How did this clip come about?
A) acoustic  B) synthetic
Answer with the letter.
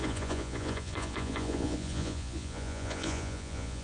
B